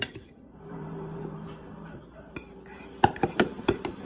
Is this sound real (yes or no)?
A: no